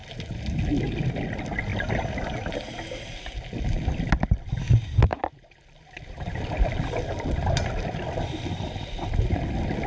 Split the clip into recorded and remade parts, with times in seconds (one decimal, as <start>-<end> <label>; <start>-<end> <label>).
0.0-0.6 remade; 0.6-5.1 recorded; 5.1-9.0 remade; 9.0-9.9 recorded